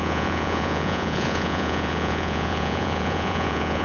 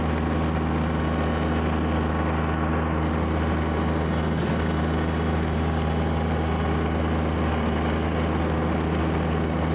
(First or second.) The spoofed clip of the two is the first